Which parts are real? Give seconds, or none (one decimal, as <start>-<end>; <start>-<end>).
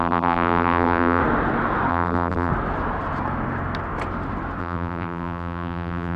1.2-1.9; 2.5-4.6